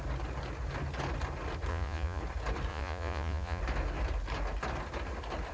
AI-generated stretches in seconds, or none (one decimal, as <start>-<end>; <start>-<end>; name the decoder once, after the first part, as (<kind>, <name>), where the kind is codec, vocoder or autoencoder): 1.7-2.2 (vocoder, Vocos); 2.7-3.6